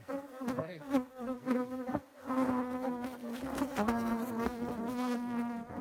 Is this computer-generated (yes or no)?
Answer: yes